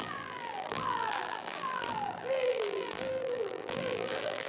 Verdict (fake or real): fake